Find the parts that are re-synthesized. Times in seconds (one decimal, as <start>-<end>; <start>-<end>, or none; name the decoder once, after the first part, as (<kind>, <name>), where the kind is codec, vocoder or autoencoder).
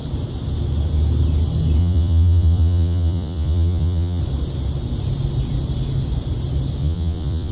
1.8-4.2 (vocoder, Vocos); 6.8-7.5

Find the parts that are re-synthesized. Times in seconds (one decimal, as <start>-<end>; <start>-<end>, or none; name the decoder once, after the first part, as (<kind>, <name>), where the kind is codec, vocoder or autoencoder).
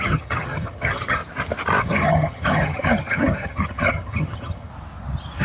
0.0-1.2 (vocoder, HiFi-GAN); 1.8-4.7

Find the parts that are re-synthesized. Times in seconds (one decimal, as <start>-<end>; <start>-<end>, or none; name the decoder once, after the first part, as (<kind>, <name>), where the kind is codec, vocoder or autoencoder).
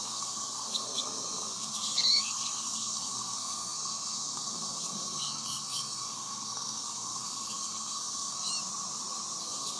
0.0-8.5 (codec, SNAC); 9.4-9.8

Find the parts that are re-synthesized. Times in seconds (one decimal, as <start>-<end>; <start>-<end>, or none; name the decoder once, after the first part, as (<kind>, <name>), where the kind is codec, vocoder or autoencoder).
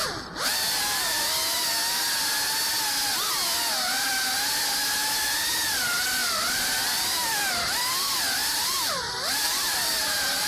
0.0-1.2 (vocoder, BigVGAN v2); 6.2-7.5; 8.4-10.5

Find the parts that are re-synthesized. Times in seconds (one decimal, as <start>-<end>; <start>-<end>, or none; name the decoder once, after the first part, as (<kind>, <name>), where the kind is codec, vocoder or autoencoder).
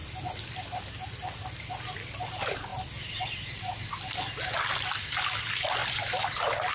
none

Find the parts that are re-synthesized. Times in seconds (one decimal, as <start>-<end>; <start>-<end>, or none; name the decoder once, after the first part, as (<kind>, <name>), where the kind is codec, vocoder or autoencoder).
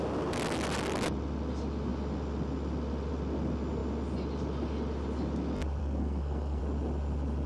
5.8-6.6 (codec, SNAC)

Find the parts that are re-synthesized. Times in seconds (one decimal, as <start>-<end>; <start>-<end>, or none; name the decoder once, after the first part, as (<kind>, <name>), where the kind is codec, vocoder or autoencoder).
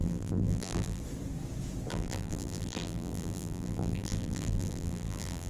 0.0-1.0 (vocoder, BigVGAN v2); 1.9-5.5